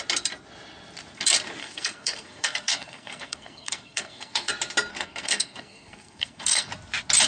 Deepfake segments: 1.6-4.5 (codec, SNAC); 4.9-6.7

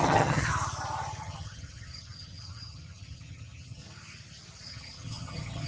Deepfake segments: 0.0-0.5 (vocoder, HiFi-GAN); 1.2-3.8; 4.7-5.7

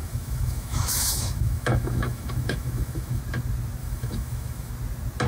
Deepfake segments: 0.0-3.2 (autoencoder, DAC-VAE); 3.8-4.7